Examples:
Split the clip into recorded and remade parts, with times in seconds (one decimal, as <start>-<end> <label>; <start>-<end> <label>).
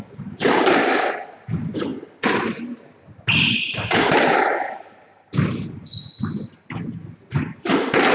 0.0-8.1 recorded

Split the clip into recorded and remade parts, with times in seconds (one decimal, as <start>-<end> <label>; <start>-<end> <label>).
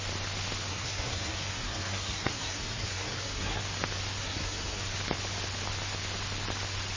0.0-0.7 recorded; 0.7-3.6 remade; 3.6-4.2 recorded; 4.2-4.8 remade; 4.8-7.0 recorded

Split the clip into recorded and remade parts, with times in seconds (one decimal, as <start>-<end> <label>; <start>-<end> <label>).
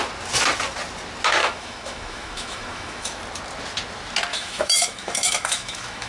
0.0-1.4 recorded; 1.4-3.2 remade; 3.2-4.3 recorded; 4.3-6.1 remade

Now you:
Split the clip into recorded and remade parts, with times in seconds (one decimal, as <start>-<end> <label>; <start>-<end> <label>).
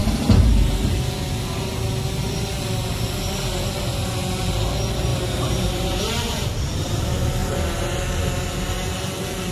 0.0-5.1 recorded; 5.1-7.0 remade; 7.0-7.4 recorded; 7.4-8.0 remade; 8.0-9.5 recorded